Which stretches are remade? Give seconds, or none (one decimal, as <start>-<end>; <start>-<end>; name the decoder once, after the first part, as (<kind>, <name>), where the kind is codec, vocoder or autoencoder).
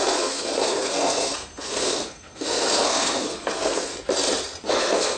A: 0.0-3.9 (codec, SNAC); 4.7-5.2